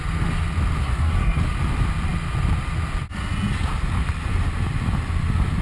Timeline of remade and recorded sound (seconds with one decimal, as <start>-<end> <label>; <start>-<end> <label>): 0.0-0.8 recorded; 0.8-1.4 remade; 1.4-5.6 recorded